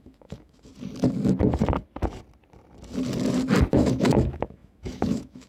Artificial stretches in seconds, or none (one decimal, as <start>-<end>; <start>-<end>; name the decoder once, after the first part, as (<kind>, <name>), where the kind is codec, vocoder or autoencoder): 0.0-0.7 (autoencoder, DAC-VAE); 3.7-5.5